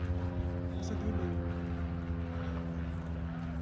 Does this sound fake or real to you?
real